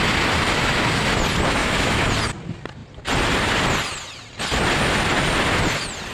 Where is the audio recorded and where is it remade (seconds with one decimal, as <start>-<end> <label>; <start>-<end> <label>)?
0.0-1.6 recorded; 1.6-2.1 remade; 2.1-6.1 recorded